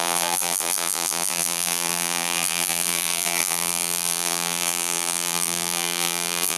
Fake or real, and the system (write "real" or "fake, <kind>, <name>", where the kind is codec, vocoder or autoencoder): fake, vocoder, BigVGAN v2